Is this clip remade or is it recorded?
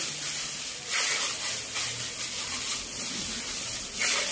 recorded